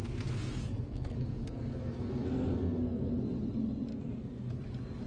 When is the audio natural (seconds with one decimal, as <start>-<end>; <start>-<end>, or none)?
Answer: 3.1-3.9; 4.6-5.1